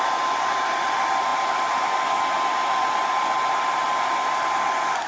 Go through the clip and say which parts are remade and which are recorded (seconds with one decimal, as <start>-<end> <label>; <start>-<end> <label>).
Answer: 0.0-5.1 recorded